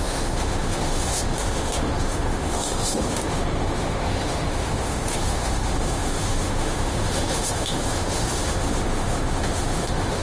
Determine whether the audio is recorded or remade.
remade